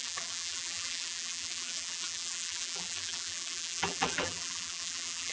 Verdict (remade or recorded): remade